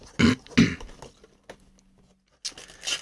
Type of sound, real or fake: real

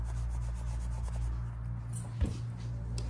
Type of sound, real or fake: real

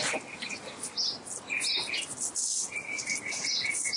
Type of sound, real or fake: real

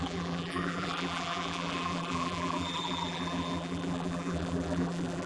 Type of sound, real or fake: fake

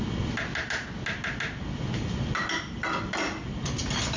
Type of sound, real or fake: real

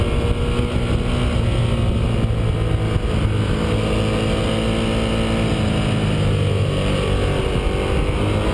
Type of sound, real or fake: real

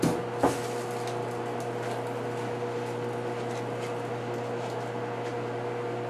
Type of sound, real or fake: real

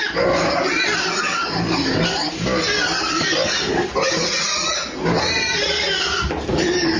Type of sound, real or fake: real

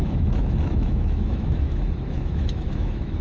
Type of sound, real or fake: fake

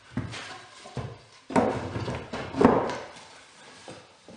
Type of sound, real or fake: fake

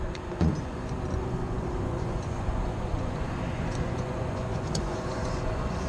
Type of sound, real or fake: fake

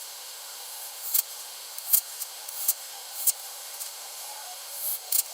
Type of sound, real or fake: fake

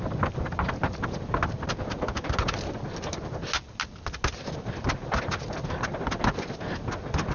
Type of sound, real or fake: real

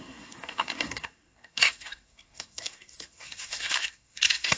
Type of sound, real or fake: fake